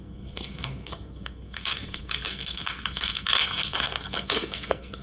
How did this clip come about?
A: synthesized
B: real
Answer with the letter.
A